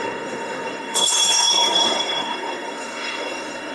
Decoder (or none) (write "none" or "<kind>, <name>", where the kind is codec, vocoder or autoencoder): codec, SNAC